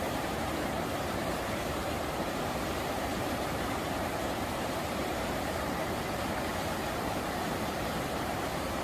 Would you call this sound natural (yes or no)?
no